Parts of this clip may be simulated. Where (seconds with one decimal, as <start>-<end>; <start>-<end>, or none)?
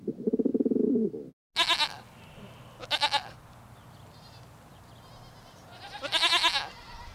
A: none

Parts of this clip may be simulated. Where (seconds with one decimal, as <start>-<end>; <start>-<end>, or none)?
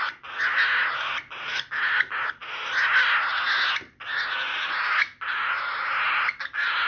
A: none